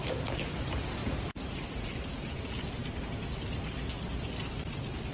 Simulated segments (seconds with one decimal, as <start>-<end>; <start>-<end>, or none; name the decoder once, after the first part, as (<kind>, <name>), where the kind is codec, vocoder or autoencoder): 1.0-1.9 (vocoder, Vocos)